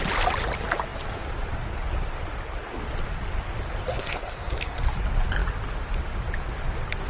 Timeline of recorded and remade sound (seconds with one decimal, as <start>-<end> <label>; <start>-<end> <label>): 0.0-3.9 recorded; 3.9-4.8 remade; 4.8-7.1 recorded